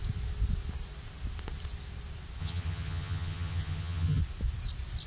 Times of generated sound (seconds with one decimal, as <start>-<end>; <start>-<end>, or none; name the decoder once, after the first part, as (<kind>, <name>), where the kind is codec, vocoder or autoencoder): 2.4-4.2 (vocoder, HiFi-GAN)